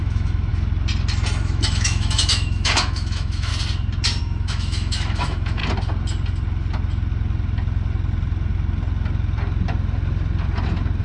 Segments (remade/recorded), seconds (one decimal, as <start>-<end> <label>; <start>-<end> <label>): 0.0-0.5 remade; 0.5-1.4 recorded; 1.4-3.5 remade; 3.5-4.2 recorded; 4.2-5.6 remade; 5.6-11.0 recorded